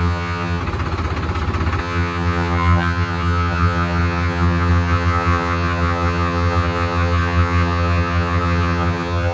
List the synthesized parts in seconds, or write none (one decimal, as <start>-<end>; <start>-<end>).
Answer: 0.0-0.6; 1.8-9.3